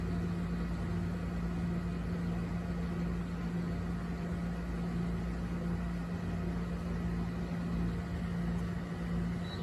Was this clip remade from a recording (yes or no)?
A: no